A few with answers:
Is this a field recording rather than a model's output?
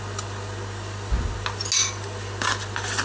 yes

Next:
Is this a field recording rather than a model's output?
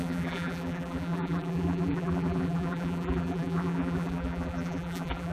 no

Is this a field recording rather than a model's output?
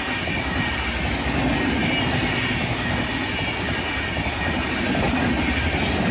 yes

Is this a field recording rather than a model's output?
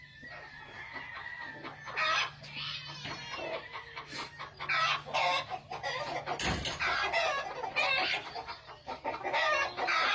yes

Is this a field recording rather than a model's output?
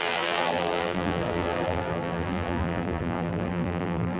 no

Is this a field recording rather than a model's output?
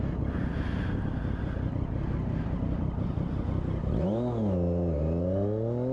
yes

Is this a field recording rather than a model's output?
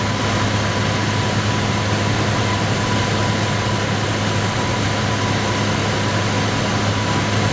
yes